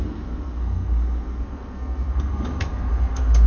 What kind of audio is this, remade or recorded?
remade